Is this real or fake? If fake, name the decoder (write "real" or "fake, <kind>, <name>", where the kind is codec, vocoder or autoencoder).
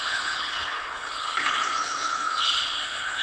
fake, codec, HILCodec